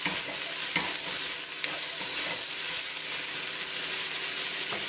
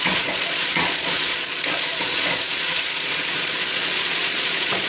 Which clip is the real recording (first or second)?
first